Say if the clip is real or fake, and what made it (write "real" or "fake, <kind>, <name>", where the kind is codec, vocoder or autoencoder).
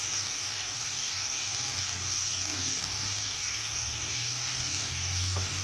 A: fake, codec, DAC